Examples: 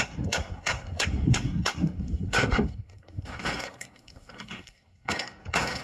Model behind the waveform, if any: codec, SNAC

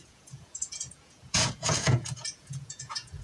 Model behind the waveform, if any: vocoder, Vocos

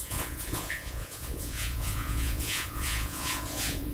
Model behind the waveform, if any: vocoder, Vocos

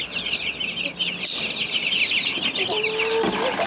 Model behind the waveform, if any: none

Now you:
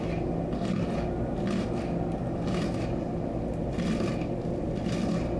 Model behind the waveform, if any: none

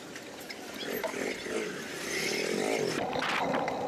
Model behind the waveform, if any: none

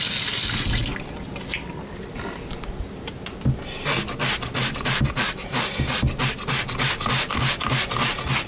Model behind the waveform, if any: none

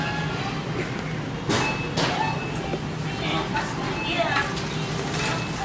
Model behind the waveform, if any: none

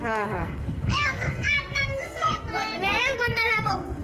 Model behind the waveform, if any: codec, SNAC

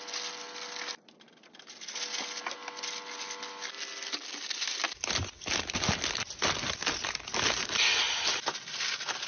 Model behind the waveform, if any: none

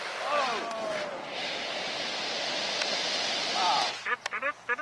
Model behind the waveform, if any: none